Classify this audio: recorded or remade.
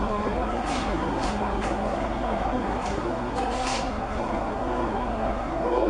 remade